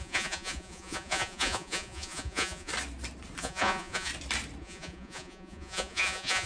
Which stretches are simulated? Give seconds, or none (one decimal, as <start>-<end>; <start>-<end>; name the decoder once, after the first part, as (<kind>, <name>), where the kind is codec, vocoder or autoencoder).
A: 0.0-2.7 (vocoder, Vocos); 3.4-4.1; 4.6-6.5